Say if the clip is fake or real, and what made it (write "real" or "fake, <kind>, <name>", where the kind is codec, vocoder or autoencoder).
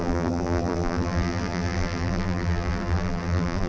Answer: fake, vocoder, BigVGAN v2